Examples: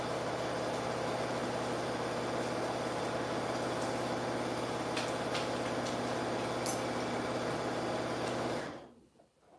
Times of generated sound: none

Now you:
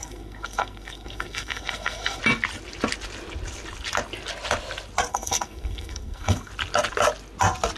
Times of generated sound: 0.0-2.2 (codec, SNAC); 5.1-6.5

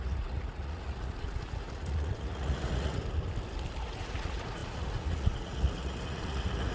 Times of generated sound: 0.0-3.0 (vocoder, Vocos); 3.8-6.7

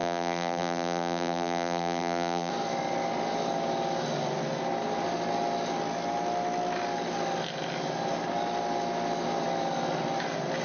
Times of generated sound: 0.0-2.5 (vocoder, BigVGAN v2)